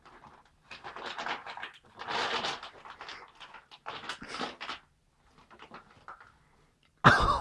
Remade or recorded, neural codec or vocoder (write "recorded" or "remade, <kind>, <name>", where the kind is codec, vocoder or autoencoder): recorded